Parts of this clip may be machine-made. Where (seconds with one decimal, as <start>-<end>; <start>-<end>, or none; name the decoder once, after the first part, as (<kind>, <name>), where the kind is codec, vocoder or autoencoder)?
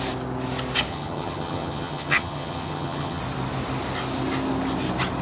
0.9-3.2 (vocoder, HiFi-GAN)